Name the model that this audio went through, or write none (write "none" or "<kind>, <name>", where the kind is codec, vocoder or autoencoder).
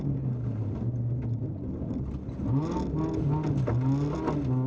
none